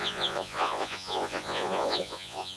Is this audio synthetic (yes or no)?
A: yes